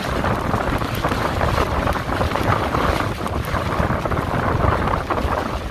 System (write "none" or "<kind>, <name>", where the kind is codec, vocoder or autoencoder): none